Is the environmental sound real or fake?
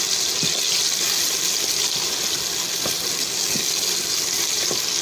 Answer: real